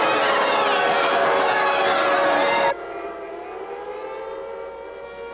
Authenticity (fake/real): real